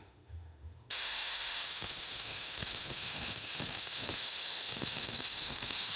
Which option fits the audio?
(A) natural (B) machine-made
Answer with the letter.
B